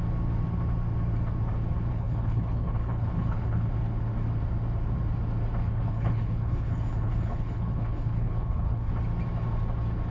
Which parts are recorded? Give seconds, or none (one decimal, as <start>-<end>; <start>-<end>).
0.0-1.9; 3.7-5.6; 8.9-10.1